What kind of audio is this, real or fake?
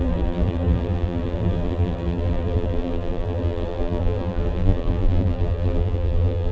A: fake